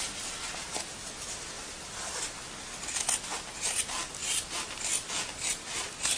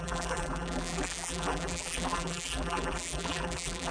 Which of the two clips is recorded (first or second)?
first